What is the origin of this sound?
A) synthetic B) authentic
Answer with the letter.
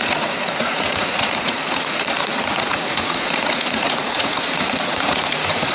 A